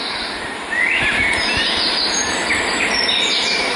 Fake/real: real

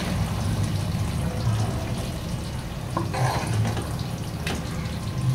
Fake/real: real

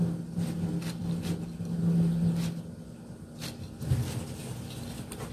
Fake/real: real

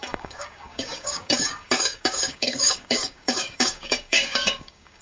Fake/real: fake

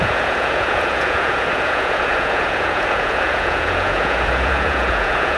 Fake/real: fake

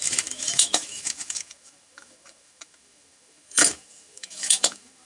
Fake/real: fake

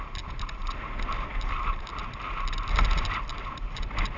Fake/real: real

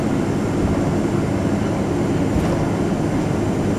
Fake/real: real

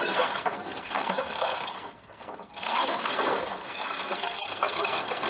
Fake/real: fake